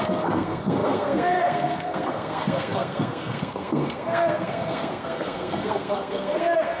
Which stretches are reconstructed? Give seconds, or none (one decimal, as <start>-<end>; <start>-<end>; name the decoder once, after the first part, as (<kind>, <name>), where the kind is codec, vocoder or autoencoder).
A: 0.0-6.8 (codec, SNAC)